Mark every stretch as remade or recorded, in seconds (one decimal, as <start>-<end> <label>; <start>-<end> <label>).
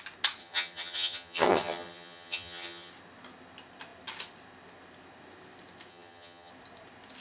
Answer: 0.0-0.4 recorded; 0.4-2.9 remade; 2.9-5.9 recorded; 5.9-6.5 remade; 6.5-7.2 recorded